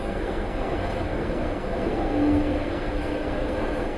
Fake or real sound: fake